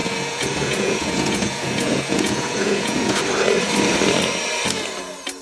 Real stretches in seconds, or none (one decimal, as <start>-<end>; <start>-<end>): 3.2-5.4